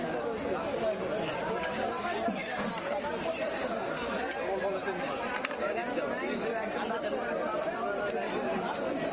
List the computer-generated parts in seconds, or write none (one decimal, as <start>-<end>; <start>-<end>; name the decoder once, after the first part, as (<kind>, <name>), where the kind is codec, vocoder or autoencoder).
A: none

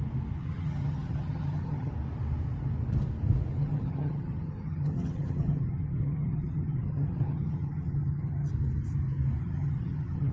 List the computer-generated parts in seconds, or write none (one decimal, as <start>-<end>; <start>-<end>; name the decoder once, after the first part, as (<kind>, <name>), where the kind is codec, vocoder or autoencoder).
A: 0.4-1.9 (vocoder, HiFi-GAN); 3.6-8.5; 9.4-10.3

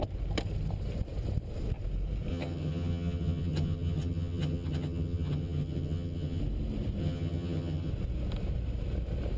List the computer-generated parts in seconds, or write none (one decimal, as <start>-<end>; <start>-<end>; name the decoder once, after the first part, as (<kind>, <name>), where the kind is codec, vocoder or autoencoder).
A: 2.3-6.4 (vocoder, HiFi-GAN); 7.0-7.9

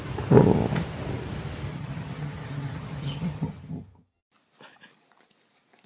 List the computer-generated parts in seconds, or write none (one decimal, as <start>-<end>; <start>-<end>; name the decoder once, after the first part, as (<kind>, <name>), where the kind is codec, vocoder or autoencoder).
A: 1.7-4.2 (vocoder, HiFi-GAN)

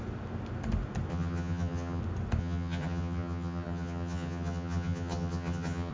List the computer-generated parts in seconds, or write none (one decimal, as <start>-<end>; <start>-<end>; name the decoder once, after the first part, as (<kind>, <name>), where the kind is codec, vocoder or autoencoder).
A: 1.1-2.0 (vocoder, HiFi-GAN); 2.4-5.9

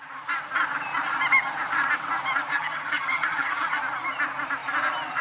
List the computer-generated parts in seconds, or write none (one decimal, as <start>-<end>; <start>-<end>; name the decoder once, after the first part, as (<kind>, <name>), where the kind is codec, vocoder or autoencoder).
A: 2.5-3.8 (vocoder, HiFi-GAN)

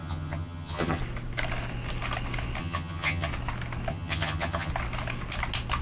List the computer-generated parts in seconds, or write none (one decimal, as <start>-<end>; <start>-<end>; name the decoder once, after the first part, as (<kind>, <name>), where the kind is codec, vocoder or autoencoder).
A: 0.0-1.0 (vocoder, HiFi-GAN); 2.6-3.3; 3.9-4.7

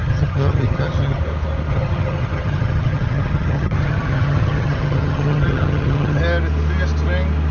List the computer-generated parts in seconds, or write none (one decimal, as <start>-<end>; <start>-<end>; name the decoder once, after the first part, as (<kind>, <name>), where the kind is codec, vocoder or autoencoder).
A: 0.0-1.2 (vocoder, HiFi-GAN); 1.7-6.2